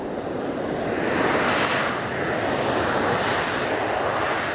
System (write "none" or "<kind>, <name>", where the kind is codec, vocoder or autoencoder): none